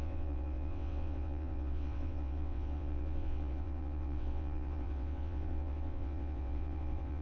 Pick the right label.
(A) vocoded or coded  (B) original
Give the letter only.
A